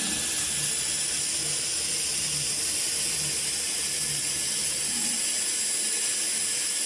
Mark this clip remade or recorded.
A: recorded